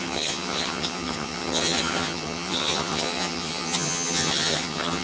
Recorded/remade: remade